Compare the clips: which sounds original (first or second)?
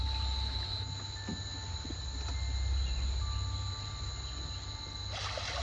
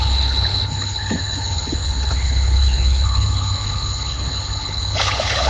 first